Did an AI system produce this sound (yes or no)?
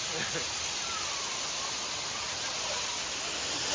no